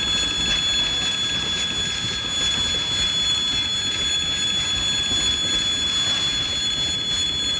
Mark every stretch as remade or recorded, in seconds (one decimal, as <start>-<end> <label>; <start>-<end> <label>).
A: 0.0-7.6 recorded